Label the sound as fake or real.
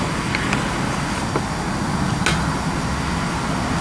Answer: real